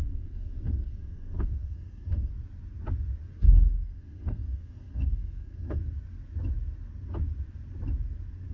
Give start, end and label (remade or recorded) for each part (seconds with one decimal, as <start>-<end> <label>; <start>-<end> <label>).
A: 0.0-2.3 remade; 2.3-3.3 recorded; 3.3-5.8 remade; 5.8-8.5 recorded